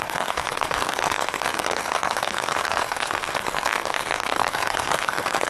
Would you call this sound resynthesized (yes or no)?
yes